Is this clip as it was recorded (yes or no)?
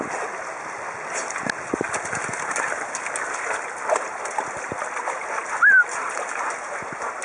yes